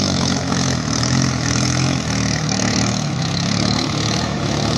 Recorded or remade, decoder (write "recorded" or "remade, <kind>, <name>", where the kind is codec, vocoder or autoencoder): remade, autoencoder, DAC-VAE